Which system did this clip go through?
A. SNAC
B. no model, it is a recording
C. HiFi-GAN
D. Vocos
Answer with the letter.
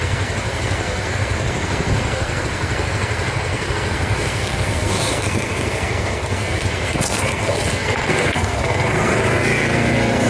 A